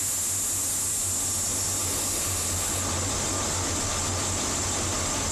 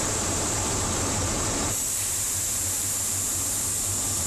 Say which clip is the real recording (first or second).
first